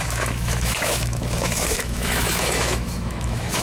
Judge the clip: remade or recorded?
remade